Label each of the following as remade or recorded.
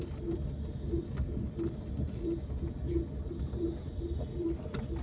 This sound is recorded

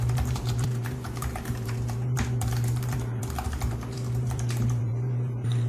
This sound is remade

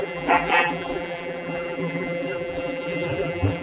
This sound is remade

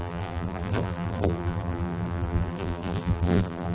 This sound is remade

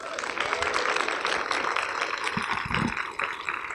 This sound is recorded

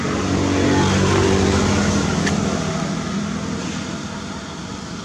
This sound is recorded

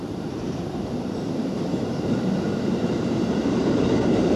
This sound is remade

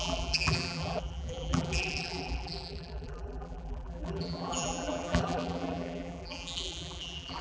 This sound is remade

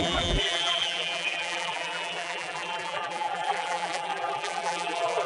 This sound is remade